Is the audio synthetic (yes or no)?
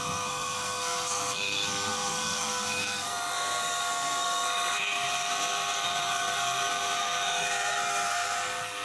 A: yes